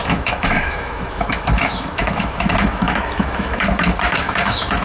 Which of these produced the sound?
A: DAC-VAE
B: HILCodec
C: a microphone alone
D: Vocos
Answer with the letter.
A